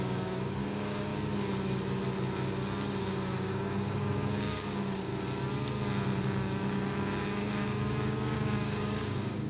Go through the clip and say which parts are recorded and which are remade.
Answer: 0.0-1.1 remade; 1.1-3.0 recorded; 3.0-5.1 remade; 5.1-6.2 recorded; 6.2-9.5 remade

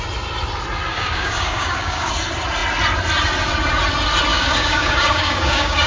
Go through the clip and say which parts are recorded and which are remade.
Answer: 0.0-0.9 recorded; 0.9-2.1 remade; 2.1-4.3 recorded; 4.3-5.9 remade